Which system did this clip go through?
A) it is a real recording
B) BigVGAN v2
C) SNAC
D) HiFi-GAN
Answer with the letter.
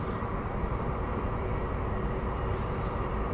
B